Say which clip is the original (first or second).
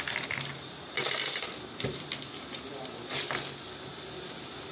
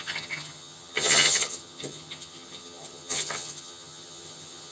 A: first